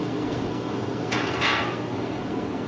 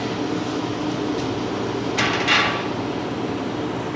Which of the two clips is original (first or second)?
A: second